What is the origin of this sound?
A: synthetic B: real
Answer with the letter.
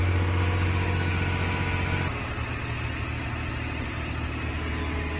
B